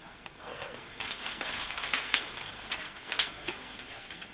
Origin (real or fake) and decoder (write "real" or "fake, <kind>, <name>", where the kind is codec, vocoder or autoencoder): fake, codec, SNAC